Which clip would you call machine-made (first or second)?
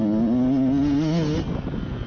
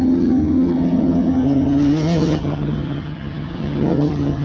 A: second